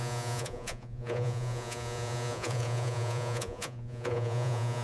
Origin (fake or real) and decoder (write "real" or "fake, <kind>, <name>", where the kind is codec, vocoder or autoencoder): fake, vocoder, Vocos